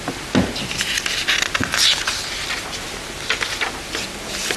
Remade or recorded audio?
recorded